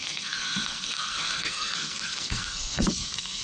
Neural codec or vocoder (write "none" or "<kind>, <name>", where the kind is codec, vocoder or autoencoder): codec, SNAC